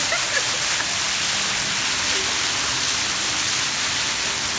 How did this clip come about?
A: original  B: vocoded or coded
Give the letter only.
A